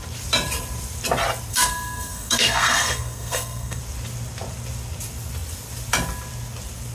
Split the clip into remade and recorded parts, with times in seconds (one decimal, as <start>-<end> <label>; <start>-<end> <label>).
0.0-1.5 recorded; 1.5-3.8 remade; 3.8-6.9 recorded